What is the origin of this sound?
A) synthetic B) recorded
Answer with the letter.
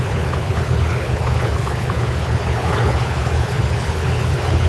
A